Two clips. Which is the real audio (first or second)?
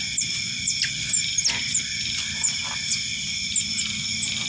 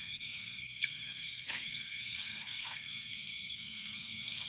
first